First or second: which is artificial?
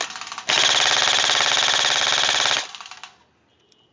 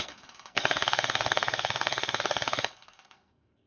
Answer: second